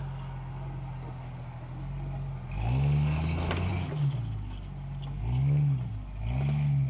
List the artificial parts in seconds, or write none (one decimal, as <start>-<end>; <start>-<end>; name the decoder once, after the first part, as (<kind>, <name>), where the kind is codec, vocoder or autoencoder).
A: none